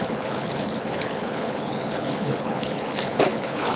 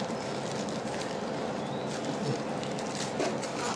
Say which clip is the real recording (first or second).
second